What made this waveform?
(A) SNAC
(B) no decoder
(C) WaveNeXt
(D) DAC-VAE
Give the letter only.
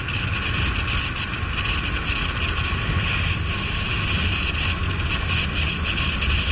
B